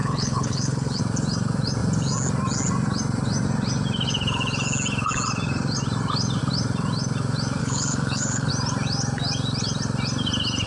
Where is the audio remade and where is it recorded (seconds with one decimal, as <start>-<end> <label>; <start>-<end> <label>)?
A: 0.0-1.0 remade; 1.0-7.6 recorded; 7.6-8.5 remade; 8.5-10.7 recorded